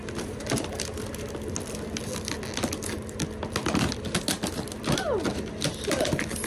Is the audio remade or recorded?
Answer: recorded